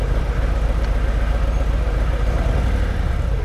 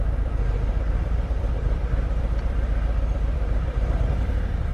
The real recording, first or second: first